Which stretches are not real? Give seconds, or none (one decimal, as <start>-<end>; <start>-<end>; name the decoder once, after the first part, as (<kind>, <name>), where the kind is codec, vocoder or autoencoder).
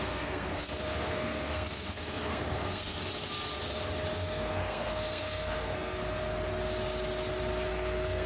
0.0-3.0 (codec, SNAC); 4.1-6.0; 7.7-8.3